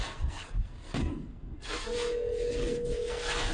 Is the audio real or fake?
fake